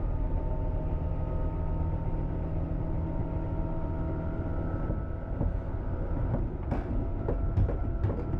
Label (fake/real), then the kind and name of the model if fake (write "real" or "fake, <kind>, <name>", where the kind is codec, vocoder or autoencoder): real